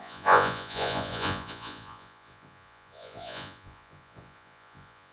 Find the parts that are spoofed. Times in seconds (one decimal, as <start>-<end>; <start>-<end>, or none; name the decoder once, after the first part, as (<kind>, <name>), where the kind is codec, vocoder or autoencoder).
0.0-5.1 (vocoder, Vocos)